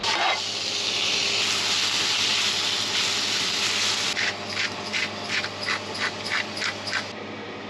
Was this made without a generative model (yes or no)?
yes